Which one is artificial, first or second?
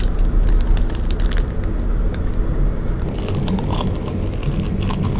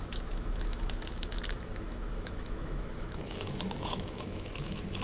second